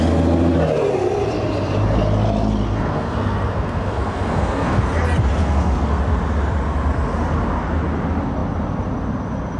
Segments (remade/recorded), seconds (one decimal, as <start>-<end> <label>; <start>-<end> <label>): 0.0-2.7 recorded; 2.7-4.8 remade; 4.8-5.4 recorded; 5.4-6.0 remade; 6.0-9.6 recorded